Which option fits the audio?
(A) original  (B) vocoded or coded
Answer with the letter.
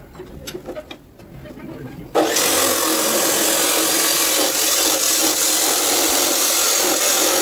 A